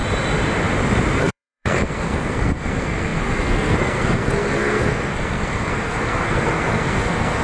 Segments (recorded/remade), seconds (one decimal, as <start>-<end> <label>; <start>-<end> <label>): 0.0-1.2 recorded; 1.2-7.4 remade